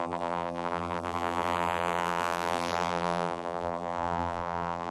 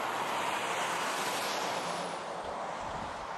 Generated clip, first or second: first